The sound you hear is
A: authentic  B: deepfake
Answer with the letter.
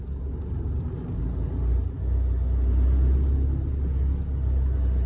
A